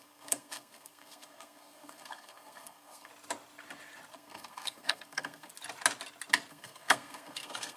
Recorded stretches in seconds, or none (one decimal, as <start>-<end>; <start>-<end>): 3.1-4.1; 5.5-6.5